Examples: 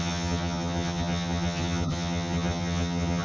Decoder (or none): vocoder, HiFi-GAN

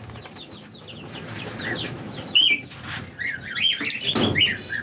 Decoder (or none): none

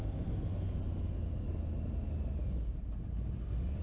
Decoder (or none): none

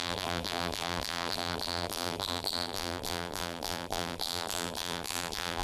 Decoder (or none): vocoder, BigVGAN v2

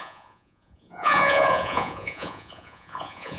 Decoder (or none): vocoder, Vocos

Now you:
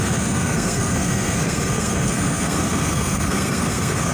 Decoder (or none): codec, SNAC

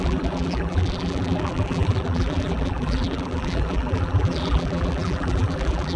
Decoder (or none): vocoder, BigVGAN v2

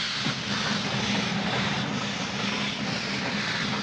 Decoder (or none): none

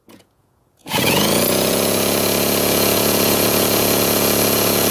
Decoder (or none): vocoder, Vocos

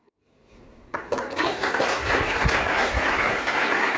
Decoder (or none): codec, SNAC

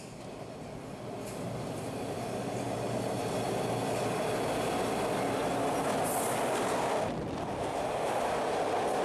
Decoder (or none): none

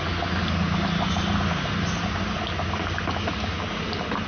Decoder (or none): none